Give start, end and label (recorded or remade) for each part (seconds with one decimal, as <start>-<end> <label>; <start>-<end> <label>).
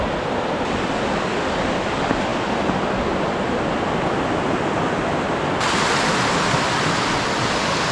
0.0-7.9 recorded